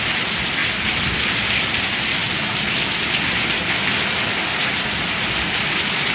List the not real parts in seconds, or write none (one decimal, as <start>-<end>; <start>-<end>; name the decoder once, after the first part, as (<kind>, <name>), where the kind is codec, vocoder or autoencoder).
0.6-1.8 (vocoder, BigVGAN v2); 2.2-3.3; 4.5-6.1